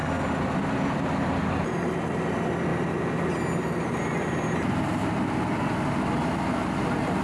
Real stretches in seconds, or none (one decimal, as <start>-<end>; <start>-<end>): 0.0-7.2